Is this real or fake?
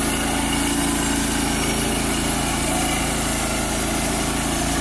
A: real